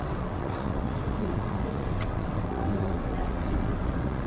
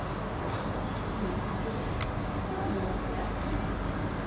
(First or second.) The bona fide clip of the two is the second